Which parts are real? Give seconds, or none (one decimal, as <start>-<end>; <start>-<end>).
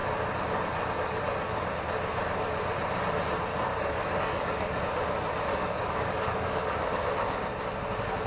0.0-3.5; 4.8-5.6; 7.0-8.3